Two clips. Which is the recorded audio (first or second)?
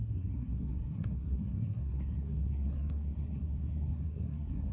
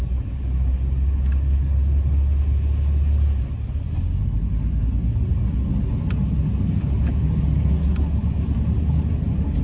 second